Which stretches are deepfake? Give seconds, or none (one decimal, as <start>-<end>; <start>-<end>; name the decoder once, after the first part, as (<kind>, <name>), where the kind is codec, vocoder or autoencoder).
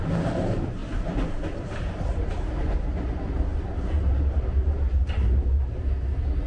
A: 0.0-0.8 (vocoder, BigVGAN v2); 2.0-6.5